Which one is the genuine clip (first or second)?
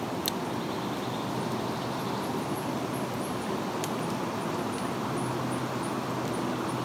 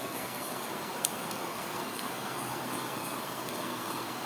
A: first